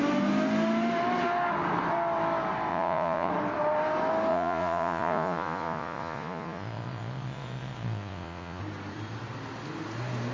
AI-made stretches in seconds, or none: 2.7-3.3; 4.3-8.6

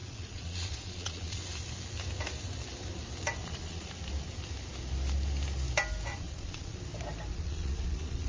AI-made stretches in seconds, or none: 0.0-1.4; 3.4-3.9; 6.1-6.8; 7.3-8.3

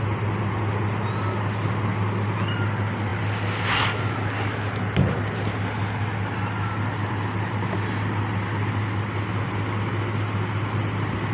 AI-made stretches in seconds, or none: none